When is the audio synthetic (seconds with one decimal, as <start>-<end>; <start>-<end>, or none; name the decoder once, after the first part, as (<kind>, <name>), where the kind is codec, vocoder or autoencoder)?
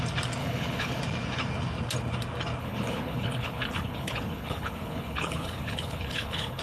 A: 0.4-1.0 (codec, HILCodec); 2.6-6.6